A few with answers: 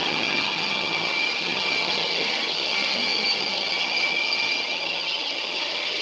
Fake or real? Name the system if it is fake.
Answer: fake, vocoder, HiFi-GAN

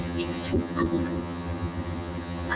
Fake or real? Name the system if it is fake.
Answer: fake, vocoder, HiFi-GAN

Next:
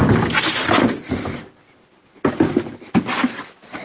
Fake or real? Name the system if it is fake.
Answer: real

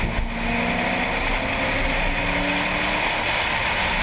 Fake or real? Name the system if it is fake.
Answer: real